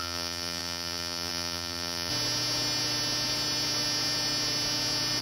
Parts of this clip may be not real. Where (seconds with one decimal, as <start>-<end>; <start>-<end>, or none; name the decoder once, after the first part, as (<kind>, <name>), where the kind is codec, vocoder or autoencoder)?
0.0-2.1 (vocoder, BigVGAN v2)